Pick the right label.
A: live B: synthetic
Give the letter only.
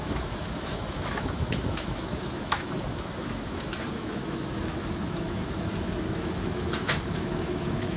B